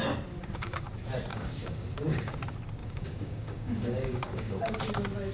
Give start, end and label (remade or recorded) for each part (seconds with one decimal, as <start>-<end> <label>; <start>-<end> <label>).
0.0-0.4 recorded; 0.4-0.9 remade; 0.9-1.3 recorded; 1.3-2.4 remade; 2.4-2.8 recorded; 2.8-4.8 remade; 4.8-5.3 recorded